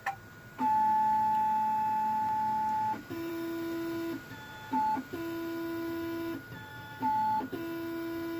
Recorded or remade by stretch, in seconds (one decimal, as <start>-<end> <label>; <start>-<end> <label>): 0.0-6.7 recorded; 6.7-7.4 remade; 7.4-8.4 recorded